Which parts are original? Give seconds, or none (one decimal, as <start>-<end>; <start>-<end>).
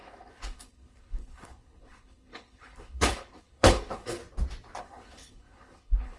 4.2-4.8